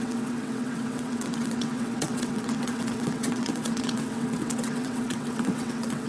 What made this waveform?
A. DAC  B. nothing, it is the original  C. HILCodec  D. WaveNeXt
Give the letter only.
D